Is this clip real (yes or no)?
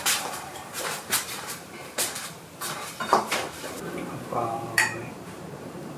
no